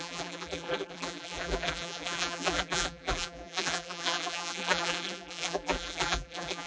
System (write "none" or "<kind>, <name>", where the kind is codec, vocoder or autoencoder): vocoder, BigVGAN v2